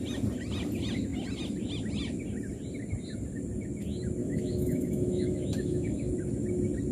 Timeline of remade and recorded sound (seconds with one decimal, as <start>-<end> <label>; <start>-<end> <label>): 0.0-4.2 recorded; 4.2-6.1 remade; 6.1-6.9 recorded